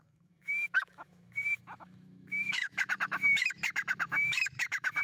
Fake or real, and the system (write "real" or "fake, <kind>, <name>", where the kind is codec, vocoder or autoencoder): fake, autoencoder, DAC-VAE